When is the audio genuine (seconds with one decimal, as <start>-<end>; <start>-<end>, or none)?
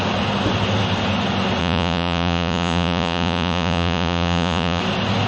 0.0-1.6; 4.8-5.3